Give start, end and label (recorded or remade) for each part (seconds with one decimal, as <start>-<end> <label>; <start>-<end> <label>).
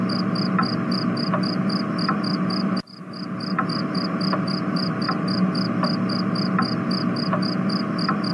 0.0-8.3 recorded